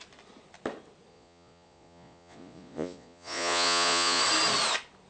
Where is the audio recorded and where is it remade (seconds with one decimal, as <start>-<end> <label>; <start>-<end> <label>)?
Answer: 0.0-1.1 recorded; 1.1-4.2 remade; 4.2-5.1 recorded